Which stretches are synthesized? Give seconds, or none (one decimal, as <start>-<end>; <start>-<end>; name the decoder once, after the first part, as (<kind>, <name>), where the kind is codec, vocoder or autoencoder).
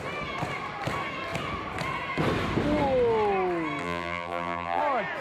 3.8-4.8 (vocoder, BigVGAN v2)